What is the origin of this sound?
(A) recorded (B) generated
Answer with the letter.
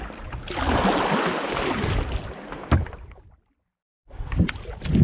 A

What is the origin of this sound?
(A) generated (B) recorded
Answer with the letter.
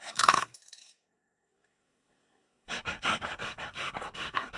A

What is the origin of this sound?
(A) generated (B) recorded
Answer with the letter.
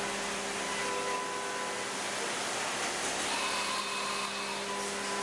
B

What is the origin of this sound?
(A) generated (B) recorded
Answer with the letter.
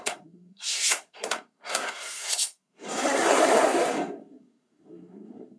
A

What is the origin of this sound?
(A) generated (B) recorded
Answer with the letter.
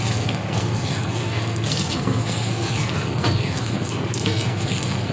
A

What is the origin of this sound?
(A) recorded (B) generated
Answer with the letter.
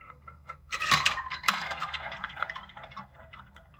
B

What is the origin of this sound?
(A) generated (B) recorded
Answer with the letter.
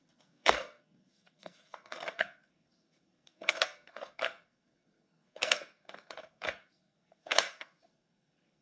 A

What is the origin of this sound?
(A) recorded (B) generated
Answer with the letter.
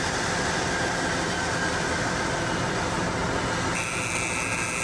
A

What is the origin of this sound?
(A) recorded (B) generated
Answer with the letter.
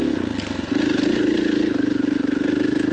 A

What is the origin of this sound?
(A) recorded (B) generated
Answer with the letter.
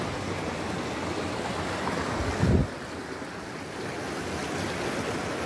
A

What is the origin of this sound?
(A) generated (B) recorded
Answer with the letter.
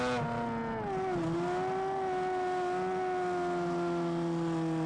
B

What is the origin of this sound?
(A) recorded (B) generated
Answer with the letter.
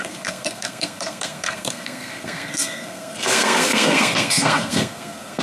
B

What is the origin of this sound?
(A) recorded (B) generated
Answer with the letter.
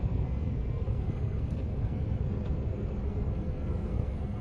B